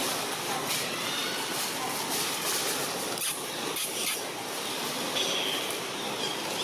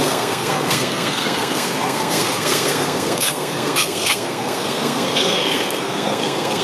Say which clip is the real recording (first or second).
first